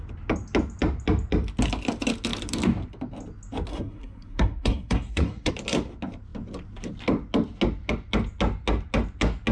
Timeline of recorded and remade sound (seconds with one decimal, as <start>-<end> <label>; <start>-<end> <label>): 0.0-3.7 recorded; 3.7-5.5 remade; 5.5-9.5 recorded